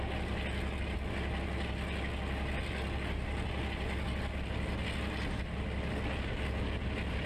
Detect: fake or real real